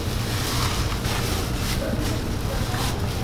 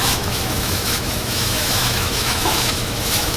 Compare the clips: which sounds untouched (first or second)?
first